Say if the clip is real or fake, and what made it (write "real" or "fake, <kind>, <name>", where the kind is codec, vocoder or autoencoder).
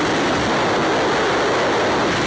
real